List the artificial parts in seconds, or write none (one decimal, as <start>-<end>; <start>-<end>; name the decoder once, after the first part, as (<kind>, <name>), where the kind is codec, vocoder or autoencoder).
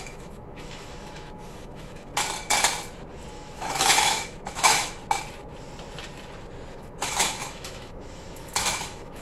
0.0-2.1 (autoencoder, DAC-VAE); 3.3-5.0; 6.7-9.2